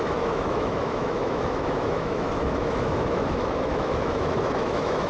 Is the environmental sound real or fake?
fake